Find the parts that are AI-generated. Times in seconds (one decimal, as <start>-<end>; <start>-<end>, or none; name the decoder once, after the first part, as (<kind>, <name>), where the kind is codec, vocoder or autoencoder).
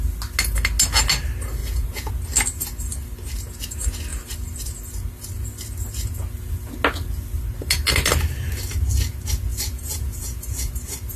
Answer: 1.6-2.1 (vocoder, Vocos); 9.5-10.7